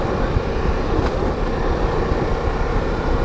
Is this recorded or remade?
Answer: recorded